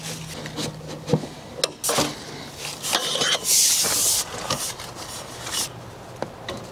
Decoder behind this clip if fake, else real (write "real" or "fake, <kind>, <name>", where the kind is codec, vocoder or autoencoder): real